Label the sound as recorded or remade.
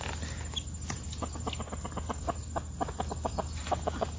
recorded